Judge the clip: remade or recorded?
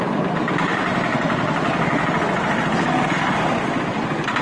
recorded